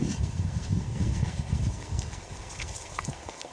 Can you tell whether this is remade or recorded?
remade